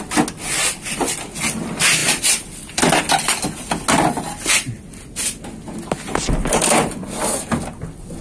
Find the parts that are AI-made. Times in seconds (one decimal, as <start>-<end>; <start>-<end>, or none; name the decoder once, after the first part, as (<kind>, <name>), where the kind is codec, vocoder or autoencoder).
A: none